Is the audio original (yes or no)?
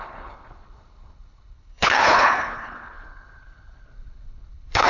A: no